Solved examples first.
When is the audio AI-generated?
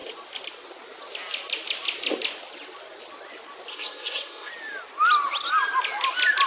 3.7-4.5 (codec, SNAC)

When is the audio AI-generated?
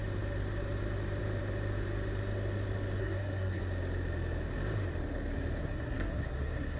3.0-3.6 (codec, SNAC); 5.6-6.8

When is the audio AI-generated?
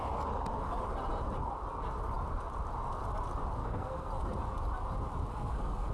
3.6-4.1 (codec, SNAC); 5.3-5.9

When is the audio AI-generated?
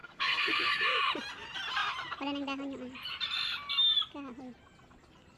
0.0-0.7 (codec, SNAC)